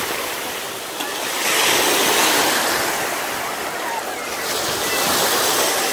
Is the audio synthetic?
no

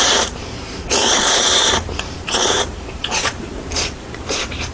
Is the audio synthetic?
yes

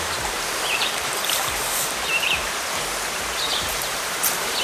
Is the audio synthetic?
yes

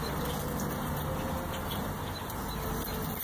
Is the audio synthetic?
no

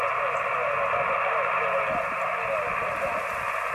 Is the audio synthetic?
no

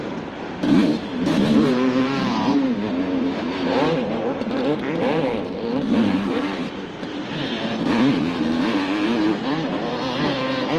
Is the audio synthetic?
yes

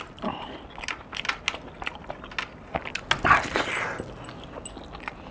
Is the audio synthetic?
no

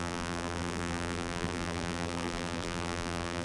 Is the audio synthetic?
yes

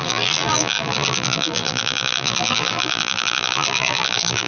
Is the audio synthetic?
yes